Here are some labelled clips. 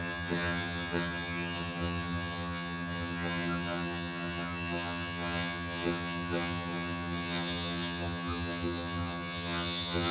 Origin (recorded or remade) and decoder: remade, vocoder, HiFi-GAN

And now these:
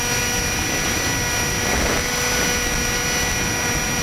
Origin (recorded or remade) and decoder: recorded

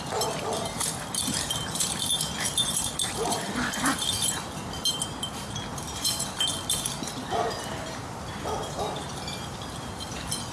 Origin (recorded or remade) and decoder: remade, vocoder, BigVGAN v2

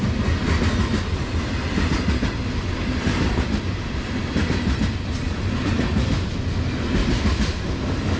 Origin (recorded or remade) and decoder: recorded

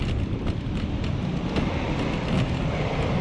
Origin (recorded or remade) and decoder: recorded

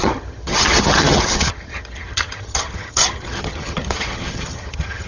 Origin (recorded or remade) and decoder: remade, vocoder, HiFi-GAN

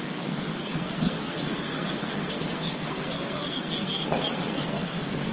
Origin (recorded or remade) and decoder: remade, codec, SNAC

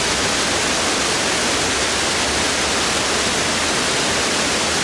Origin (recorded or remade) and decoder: recorded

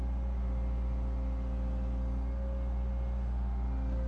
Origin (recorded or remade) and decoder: recorded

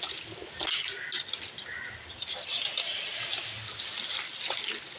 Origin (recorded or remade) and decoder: recorded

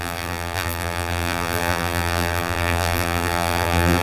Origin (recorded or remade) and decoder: remade, vocoder, BigVGAN v2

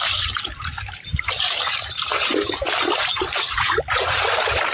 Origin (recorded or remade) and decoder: remade, vocoder, BigVGAN v2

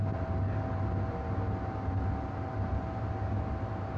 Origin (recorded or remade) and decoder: recorded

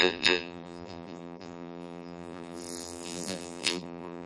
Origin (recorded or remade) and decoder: remade, vocoder, BigVGAN v2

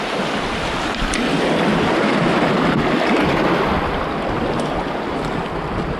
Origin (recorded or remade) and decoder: recorded